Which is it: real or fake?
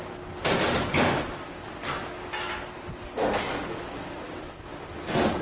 real